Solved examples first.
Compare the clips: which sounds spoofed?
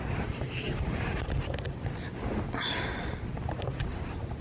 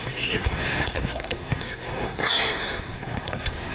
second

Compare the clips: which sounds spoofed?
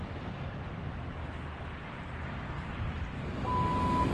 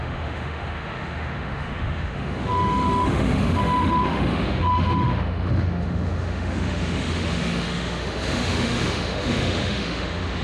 second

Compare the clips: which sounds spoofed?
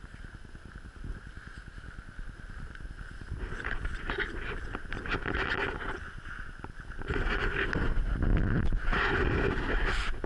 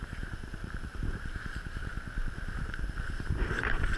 second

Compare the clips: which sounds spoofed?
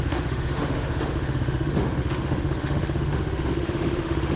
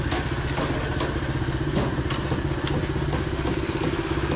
first